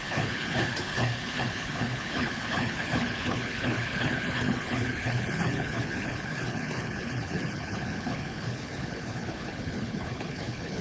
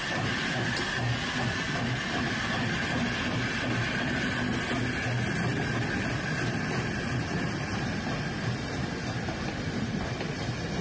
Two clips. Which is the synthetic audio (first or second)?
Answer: first